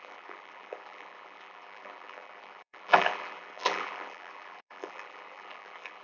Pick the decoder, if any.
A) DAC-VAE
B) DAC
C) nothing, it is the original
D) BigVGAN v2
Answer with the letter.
D